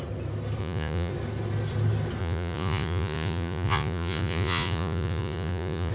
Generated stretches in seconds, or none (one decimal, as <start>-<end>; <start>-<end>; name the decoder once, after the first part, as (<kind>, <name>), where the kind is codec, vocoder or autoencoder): 0.6-1.1 (vocoder, Vocos); 2.2-5.9